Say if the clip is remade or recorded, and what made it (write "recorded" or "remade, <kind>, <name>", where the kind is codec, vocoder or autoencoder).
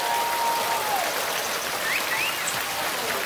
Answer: recorded